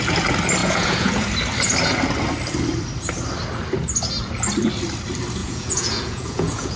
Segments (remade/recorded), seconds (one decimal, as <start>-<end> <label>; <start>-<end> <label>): 0.0-0.6 recorded; 0.6-1.3 remade; 1.3-5.4 recorded; 5.4-6.8 remade